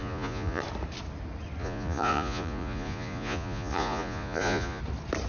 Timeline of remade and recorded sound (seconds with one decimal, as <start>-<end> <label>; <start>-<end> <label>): 0.0-0.6 remade; 0.6-1.6 recorded; 1.6-4.8 remade; 4.8-5.3 recorded